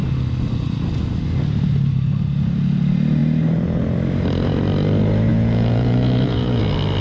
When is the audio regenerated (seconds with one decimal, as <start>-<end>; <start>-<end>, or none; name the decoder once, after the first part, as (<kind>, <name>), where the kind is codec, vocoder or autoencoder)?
5.3-6.6 (vocoder, Vocos)